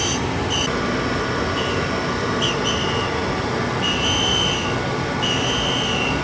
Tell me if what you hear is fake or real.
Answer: real